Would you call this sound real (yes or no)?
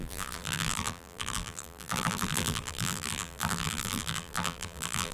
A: no